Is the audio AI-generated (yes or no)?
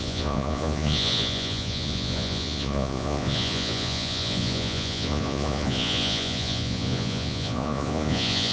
yes